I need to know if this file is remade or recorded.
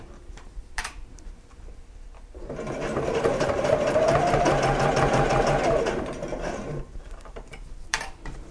remade